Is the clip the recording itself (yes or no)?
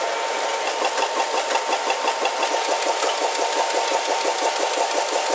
yes